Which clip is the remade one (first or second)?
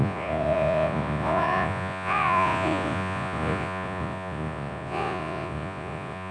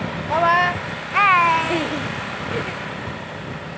first